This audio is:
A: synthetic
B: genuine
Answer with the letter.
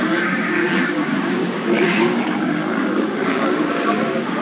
A